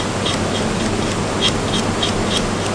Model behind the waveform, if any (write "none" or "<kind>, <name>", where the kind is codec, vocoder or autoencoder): none